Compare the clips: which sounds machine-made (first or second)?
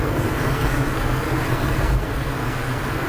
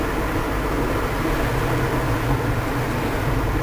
first